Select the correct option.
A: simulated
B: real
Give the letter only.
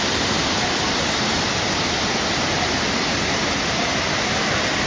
B